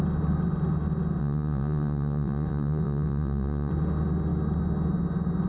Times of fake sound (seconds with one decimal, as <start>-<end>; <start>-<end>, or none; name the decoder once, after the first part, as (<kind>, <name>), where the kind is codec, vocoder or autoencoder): 1.2-3.7 (vocoder, Vocos)